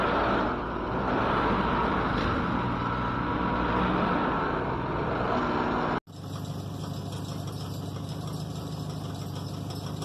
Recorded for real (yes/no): yes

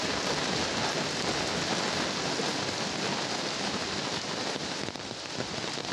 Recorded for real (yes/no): yes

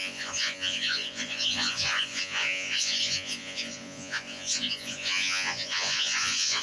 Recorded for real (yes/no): no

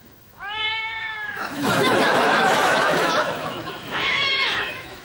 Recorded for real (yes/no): no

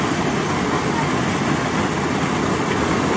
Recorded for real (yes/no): yes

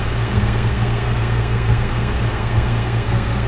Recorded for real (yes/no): no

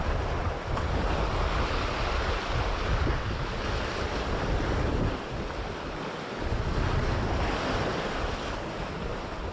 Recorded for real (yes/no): yes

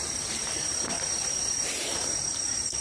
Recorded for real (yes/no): no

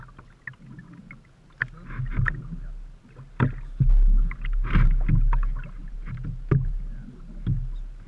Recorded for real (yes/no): yes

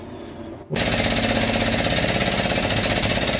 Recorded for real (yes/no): yes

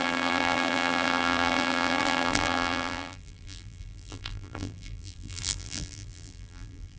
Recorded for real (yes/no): no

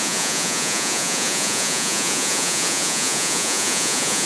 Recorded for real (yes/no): no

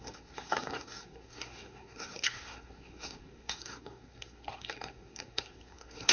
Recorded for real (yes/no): no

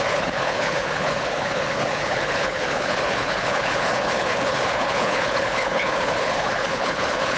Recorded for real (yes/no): no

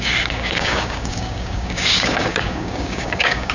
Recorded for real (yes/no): no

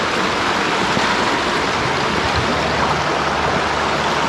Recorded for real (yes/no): yes